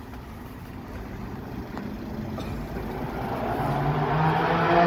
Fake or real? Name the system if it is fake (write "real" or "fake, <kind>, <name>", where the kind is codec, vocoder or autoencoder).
real